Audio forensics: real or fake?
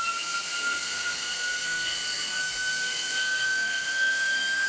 fake